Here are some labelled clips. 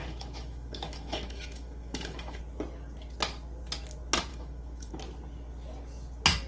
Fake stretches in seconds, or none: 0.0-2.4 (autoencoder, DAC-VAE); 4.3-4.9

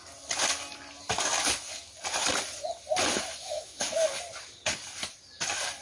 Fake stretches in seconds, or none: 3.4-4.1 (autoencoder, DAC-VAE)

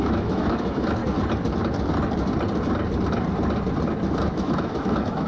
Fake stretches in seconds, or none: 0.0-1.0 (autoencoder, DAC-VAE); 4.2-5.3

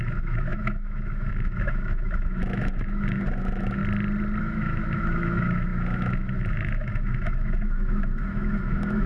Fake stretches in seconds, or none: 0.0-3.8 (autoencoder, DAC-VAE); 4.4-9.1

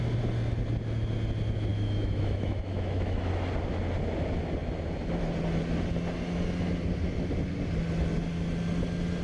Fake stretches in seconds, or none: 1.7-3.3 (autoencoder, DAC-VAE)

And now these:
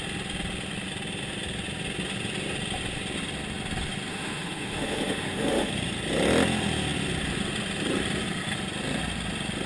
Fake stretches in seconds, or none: 4.1-5.7 (autoencoder, DAC-VAE)

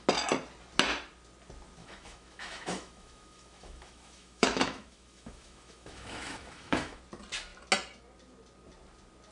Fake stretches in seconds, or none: 1.8-7.0 (autoencoder, DAC-VAE)

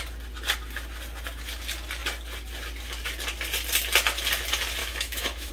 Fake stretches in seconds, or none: 4.8-5.5 (autoencoder, DAC-VAE)